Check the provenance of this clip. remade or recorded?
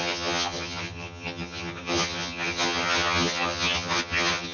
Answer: remade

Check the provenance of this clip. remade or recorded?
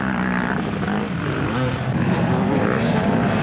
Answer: recorded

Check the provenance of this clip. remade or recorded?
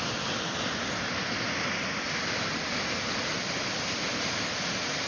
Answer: recorded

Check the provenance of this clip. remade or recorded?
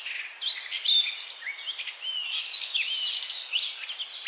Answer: recorded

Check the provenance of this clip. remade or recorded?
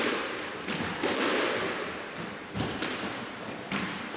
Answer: recorded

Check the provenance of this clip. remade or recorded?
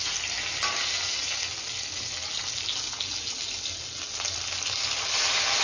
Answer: recorded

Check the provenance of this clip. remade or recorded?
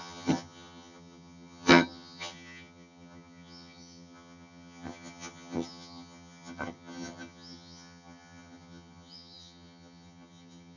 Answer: remade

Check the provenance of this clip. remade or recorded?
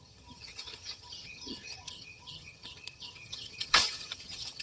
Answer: remade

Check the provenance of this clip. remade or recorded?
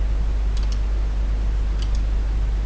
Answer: recorded